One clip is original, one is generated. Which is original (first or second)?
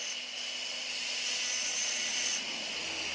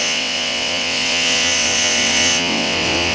first